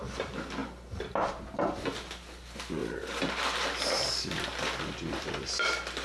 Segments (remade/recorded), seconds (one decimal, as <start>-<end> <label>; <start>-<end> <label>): 0.0-2.8 recorded; 2.8-5.5 remade; 5.5-6.0 recorded